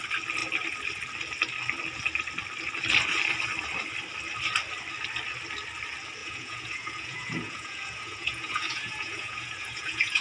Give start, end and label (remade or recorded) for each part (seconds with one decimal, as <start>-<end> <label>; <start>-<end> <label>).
0.0-6.2 recorded; 6.2-10.2 remade